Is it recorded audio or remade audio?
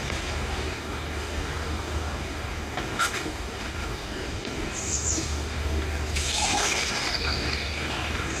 remade